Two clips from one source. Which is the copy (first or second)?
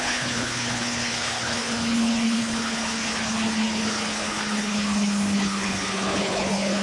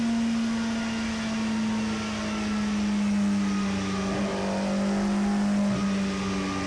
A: first